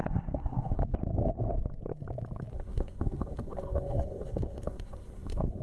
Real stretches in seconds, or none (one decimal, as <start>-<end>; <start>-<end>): 0.8-2.5